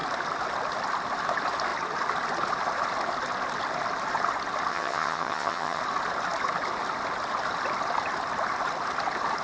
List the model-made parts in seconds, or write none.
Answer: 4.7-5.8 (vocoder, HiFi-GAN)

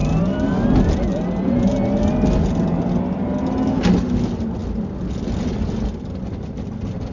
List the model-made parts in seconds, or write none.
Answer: none

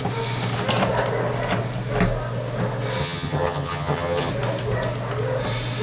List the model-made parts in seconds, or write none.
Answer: 3.0-4.3 (vocoder, HiFi-GAN)

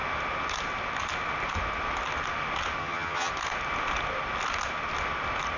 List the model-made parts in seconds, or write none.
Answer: 2.8-3.3 (vocoder, HiFi-GAN)

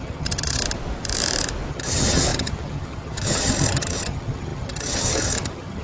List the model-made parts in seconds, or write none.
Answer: 0.0-0.6 (vocoder, HiFi-GAN); 1.7-5.8

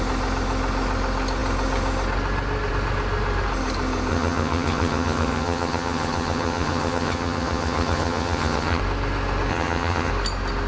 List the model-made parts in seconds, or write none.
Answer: 4.1-8.8 (vocoder, HiFi-GAN); 9.5-10.1